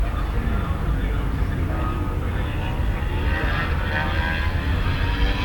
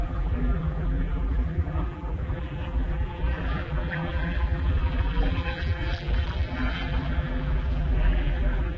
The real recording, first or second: first